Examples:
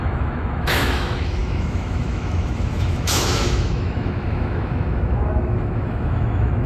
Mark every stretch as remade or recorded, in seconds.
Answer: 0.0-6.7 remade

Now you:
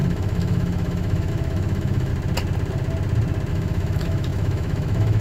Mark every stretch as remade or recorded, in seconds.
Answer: 0.0-2.1 remade; 2.1-3.5 recorded; 3.5-5.2 remade

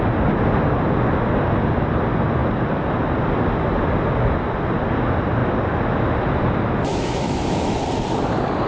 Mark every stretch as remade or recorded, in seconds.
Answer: 0.0-6.9 recorded; 6.9-7.8 remade; 7.8-8.7 recorded

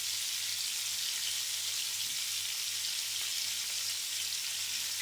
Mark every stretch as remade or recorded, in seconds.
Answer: 0.0-5.0 recorded

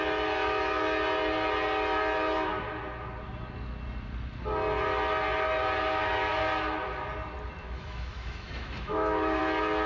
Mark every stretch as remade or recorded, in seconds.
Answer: 0.0-7.6 recorded; 7.6-9.4 remade; 9.4-9.9 recorded

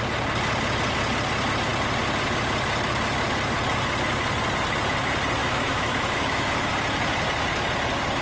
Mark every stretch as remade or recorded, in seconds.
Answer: 0.0-5.4 recorded; 5.4-6.7 remade; 6.7-8.2 recorded